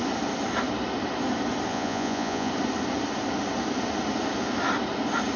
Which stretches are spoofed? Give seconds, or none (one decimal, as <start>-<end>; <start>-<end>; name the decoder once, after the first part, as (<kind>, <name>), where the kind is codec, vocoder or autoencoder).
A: 1.7-2.5 (vocoder, Vocos)

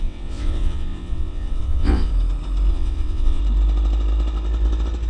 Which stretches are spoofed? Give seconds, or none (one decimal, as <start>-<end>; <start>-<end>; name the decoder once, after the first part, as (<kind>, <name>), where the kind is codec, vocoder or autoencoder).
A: 0.0-2.1 (vocoder, WaveNeXt); 2.7-3.4

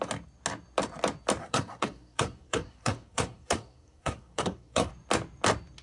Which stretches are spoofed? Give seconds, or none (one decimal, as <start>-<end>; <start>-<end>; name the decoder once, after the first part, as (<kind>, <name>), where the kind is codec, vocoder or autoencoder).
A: 1.4-4.9 (codec, SNAC)

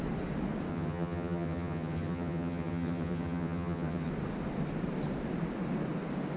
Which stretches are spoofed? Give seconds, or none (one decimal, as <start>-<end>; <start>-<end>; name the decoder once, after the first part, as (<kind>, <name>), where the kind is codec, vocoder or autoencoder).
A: 0.7-4.1 (vocoder, HiFi-GAN)

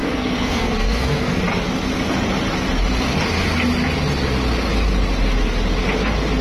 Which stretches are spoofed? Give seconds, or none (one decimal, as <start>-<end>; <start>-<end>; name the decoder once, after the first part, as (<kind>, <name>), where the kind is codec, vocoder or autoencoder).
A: 0.0-1.4 (codec, SNAC)

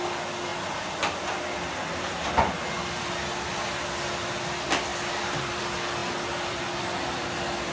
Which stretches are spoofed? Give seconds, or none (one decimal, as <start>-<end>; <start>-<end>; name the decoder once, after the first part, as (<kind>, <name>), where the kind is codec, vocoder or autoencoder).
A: 4.9-5.6 (vocoder, BigVGAN v2)

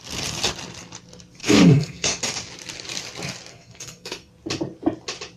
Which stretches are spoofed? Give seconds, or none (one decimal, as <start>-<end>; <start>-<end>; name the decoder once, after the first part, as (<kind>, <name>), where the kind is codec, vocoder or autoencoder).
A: 1.4-2.2 (codec, SNAC); 3.5-4.3

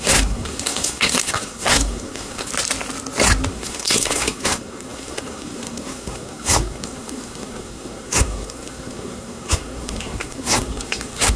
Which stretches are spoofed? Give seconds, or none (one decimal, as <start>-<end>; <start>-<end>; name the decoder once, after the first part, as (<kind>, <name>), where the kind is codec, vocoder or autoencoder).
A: 0.0-2.5 (codec, SNAC); 3.5-11.4